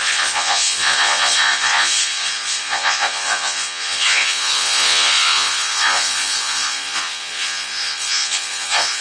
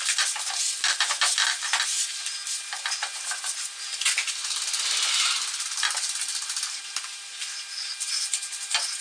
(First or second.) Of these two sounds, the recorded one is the second